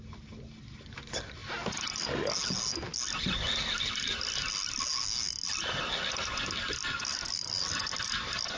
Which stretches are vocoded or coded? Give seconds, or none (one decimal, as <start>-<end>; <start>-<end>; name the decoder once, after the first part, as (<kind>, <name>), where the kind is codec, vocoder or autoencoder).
none